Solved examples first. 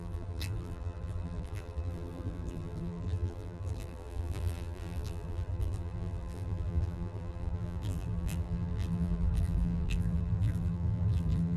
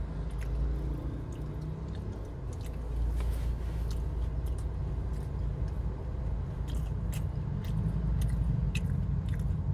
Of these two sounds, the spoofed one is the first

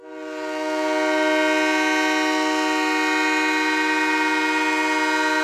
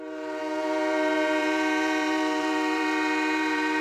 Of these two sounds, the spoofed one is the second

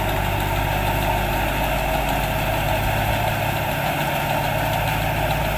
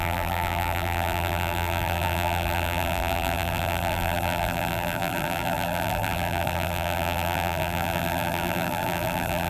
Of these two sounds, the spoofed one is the second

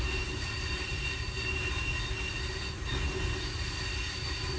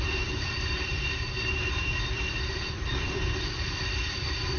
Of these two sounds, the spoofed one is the second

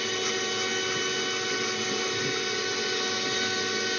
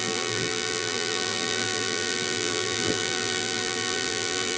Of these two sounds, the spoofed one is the second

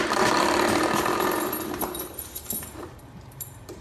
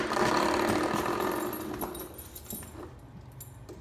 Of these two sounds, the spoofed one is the first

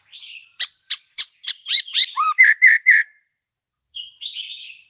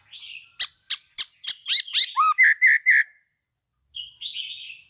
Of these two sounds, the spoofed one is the first